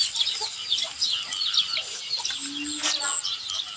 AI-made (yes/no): no